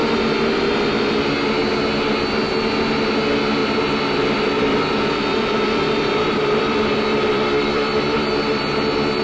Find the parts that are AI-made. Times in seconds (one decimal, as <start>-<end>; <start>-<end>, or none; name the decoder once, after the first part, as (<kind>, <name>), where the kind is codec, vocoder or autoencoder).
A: 3.6-8.6 (vocoder, BigVGAN v2)